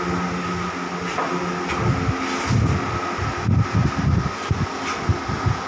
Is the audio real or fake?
real